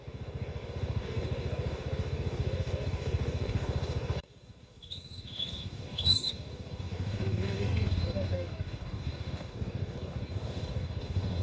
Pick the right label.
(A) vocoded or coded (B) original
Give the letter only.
A